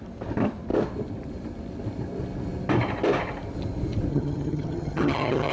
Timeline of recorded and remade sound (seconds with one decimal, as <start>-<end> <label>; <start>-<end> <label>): 0.0-4.1 recorded; 4.1-5.5 remade